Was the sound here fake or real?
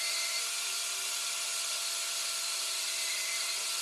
real